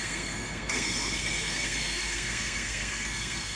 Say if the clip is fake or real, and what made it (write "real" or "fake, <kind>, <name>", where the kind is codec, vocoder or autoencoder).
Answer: fake, codec, SNAC